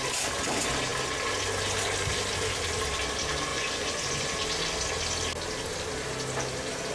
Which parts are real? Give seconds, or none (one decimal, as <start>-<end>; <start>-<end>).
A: 0.0-3.5; 4.3-6.9